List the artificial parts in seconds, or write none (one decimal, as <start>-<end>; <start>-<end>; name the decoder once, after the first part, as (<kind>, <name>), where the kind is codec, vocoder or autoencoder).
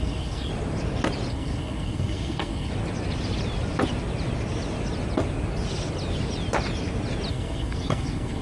0.0-0.5 (codec, SNAC); 1.3-2.7; 7.3-8.4